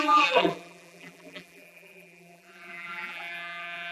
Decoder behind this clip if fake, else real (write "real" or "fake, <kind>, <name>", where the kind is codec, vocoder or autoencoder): fake, vocoder, BigVGAN v2